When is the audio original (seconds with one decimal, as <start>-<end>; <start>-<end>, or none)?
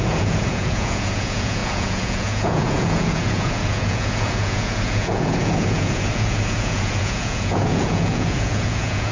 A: none